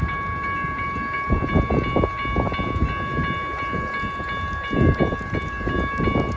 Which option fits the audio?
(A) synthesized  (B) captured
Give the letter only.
B